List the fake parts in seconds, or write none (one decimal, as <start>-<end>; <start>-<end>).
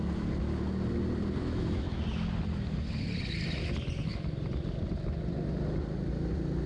1.4-2.0